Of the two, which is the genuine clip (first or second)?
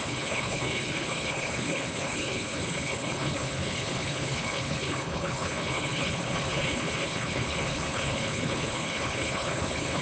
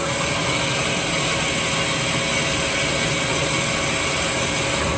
second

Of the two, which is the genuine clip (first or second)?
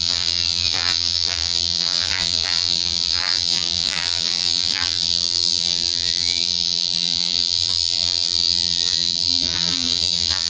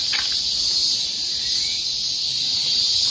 second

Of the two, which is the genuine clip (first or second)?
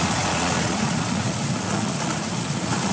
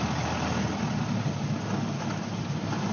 second